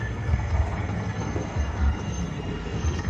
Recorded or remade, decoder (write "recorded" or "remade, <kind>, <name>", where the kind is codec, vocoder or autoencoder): remade, codec, SNAC